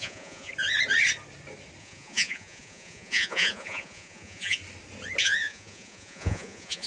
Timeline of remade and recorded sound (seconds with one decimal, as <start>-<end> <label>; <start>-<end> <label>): 0.0-0.5 remade; 0.5-1.8 recorded; 1.8-4.6 remade; 4.6-5.2 recorded; 5.2-6.9 remade